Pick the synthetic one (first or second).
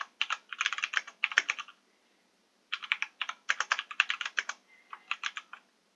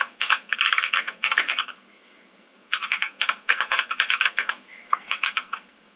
second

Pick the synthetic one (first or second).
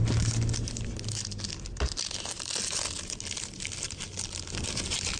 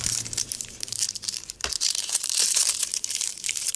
second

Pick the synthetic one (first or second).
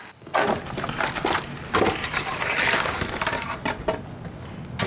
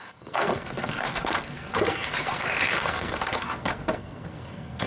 second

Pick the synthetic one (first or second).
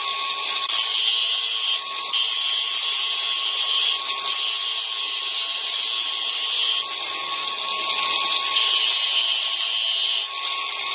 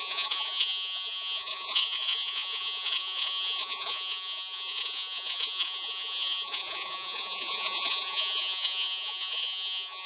second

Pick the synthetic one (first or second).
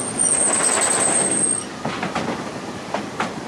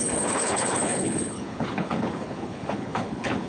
second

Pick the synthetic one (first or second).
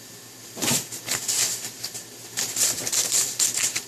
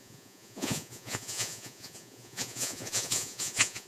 second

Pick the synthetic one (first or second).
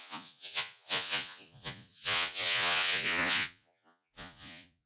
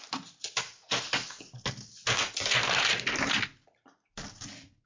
first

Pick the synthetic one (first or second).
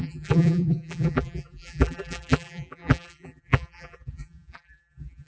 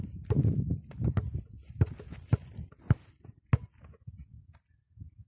first